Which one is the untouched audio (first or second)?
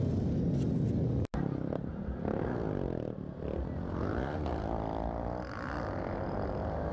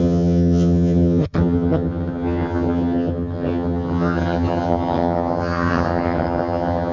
first